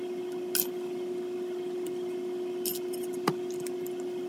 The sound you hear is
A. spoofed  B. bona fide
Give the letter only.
B